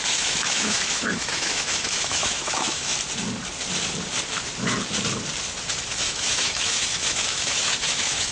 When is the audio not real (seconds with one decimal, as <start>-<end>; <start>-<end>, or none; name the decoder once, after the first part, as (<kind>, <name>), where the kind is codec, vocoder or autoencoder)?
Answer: 0.0-2.9 (autoencoder, DAC-VAE); 6.0-8.3